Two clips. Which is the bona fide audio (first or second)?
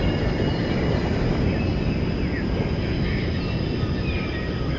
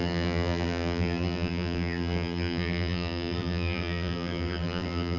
first